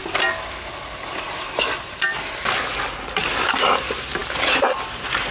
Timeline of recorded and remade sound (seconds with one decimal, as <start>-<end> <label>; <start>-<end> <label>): 0.0-5.3 recorded